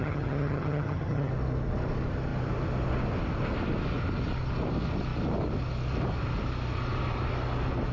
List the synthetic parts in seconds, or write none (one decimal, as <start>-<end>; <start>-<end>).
0.0-1.3